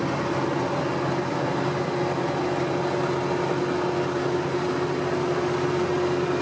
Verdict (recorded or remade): recorded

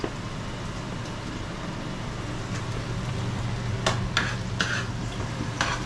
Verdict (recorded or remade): recorded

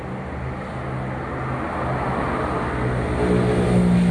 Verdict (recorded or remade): recorded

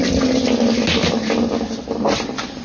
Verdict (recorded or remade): recorded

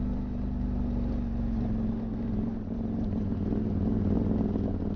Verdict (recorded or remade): recorded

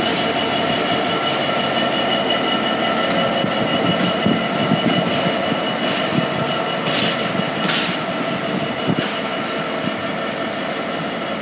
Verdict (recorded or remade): recorded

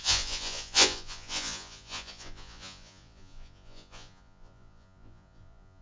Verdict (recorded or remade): remade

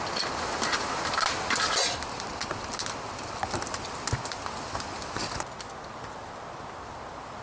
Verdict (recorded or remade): recorded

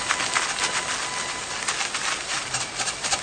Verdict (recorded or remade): recorded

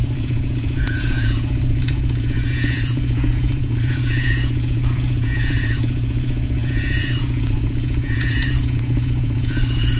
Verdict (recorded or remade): remade